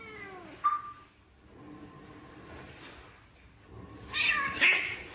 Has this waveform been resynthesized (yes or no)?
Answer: no